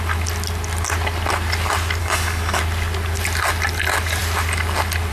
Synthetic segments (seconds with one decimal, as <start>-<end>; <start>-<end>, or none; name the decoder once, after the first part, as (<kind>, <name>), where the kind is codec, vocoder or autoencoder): 2.0-2.6 (codec, DAC)